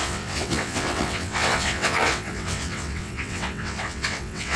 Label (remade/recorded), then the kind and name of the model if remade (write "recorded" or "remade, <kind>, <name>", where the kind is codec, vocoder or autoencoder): remade, vocoder, WaveNeXt